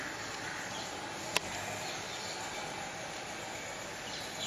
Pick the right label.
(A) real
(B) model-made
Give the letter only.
A